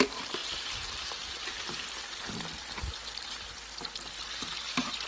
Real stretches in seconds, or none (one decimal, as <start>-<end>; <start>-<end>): 0.0-0.4; 2.8-5.1